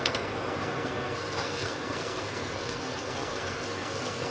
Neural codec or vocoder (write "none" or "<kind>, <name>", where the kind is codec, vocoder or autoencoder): codec, SNAC